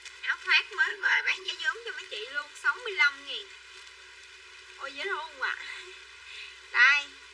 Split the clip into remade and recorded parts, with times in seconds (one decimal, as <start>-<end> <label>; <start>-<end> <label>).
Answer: 0.0-0.9 recorded; 0.9-1.5 remade; 1.5-7.3 recorded

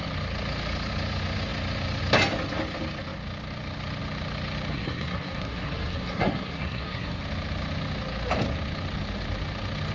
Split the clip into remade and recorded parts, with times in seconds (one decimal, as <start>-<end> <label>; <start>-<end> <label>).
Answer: 0.0-4.7 recorded; 4.7-7.2 remade; 7.2-9.9 recorded

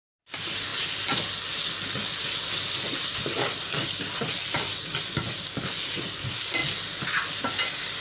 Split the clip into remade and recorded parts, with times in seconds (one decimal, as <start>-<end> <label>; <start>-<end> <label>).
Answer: 0.0-8.0 recorded

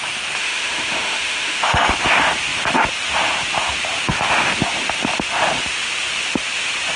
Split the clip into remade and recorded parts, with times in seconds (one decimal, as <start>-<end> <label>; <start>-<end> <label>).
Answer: 0.0-0.4 recorded; 0.4-1.9 remade; 1.9-7.0 recorded

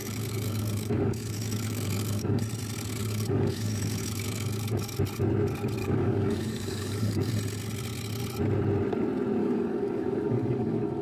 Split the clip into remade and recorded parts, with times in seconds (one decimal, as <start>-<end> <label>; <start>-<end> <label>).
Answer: 0.0-2.4 remade; 2.4-3.0 recorded; 3.0-5.0 remade; 5.0-5.8 recorded; 5.8-7.3 remade; 7.3-9.4 recorded; 9.4-11.0 remade

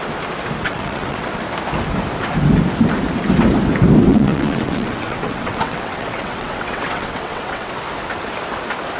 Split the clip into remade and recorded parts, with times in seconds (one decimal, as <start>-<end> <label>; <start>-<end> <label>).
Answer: 0.0-0.6 recorded; 0.6-1.4 remade; 1.4-4.1 recorded; 4.1-7.8 remade; 7.8-9.0 recorded